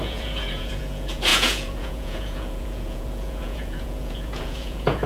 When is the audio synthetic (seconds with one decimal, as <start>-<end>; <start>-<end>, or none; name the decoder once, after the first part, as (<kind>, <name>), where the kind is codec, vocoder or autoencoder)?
0.0-5.1 (vocoder, Vocos)